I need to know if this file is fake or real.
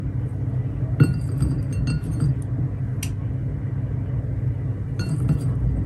real